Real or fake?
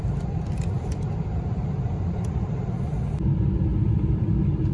real